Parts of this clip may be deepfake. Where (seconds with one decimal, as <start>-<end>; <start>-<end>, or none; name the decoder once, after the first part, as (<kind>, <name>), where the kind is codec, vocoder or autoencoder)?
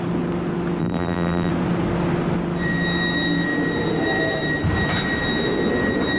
0.8-1.5 (vocoder, BigVGAN v2)